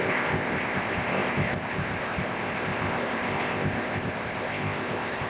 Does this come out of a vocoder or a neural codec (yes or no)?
yes